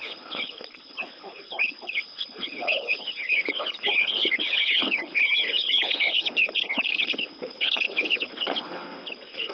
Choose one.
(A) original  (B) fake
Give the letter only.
B